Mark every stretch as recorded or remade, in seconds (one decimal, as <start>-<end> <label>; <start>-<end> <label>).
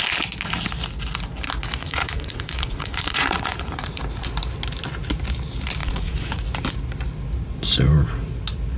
0.0-1.8 recorded; 1.8-4.0 remade; 4.0-5.8 recorded; 5.8-6.4 remade; 6.4-8.8 recorded